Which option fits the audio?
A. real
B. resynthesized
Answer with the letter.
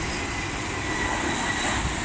A